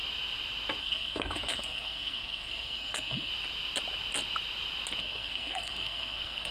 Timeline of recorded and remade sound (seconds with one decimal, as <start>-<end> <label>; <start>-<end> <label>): 0.0-0.8 recorded; 0.8-3.3 remade; 3.3-5.0 recorded; 5.0-6.5 remade